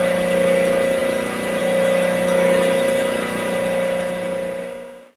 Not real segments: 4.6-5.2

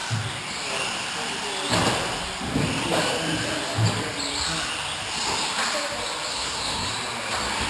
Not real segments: 6.3-6.9